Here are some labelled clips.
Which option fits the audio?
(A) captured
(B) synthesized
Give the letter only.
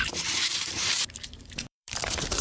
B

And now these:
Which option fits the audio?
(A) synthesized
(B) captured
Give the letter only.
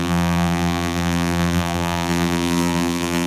A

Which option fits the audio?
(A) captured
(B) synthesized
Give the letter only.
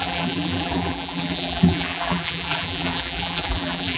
B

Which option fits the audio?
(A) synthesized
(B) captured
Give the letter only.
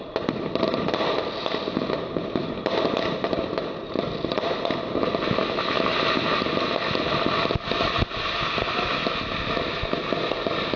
B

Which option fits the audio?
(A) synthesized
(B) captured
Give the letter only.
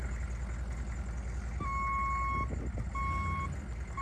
B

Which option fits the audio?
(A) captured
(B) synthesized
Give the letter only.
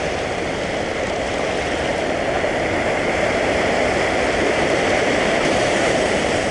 A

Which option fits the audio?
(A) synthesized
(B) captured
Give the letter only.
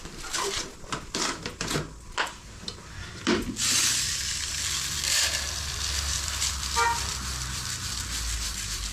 A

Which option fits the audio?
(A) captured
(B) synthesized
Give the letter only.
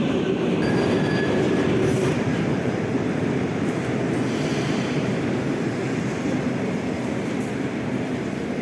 B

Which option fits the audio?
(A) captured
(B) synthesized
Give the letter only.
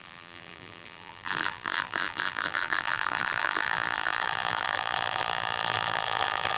B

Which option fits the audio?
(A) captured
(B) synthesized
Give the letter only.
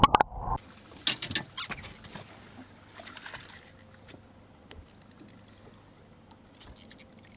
A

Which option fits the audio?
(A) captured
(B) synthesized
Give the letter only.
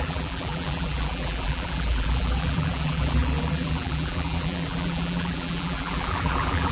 B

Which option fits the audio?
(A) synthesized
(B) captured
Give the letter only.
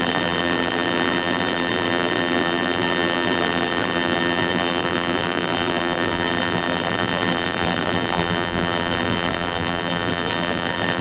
A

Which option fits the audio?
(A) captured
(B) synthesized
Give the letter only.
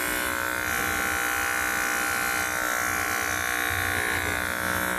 A